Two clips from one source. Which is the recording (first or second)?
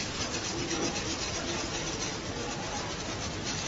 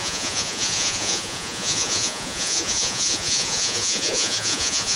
first